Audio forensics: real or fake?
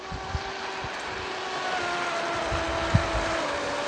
real